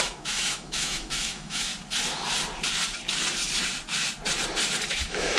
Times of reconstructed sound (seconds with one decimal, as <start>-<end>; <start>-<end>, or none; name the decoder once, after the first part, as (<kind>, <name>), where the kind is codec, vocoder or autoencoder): 0.0-1.7 (autoencoder, DAC-VAE); 4.9-5.4